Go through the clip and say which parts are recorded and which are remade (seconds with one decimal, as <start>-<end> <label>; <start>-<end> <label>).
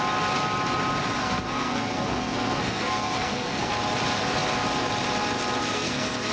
0.0-1.2 recorded; 1.2-3.7 remade; 3.7-5.6 recorded; 5.6-6.3 remade